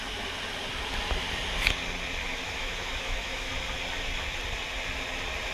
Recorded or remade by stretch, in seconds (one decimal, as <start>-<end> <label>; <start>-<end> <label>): 0.0-2.2 recorded; 2.2-3.5 remade; 3.5-5.5 recorded